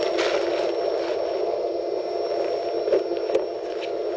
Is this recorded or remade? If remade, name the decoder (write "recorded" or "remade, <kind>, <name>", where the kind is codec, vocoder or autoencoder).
recorded